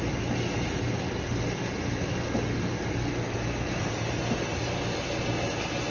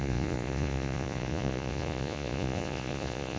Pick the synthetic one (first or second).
second